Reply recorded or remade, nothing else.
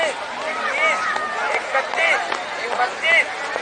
recorded